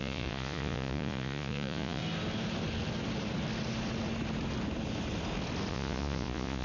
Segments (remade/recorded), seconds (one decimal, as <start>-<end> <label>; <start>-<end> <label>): 0.0-2.0 remade; 2.0-5.7 recorded; 5.7-6.6 remade